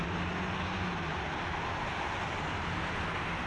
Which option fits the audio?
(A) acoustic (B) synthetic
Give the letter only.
A